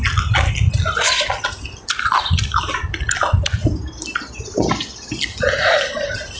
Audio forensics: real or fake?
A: real